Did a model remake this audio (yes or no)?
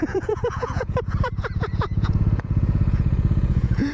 yes